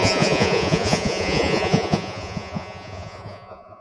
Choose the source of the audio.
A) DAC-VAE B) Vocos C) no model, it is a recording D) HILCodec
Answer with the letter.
B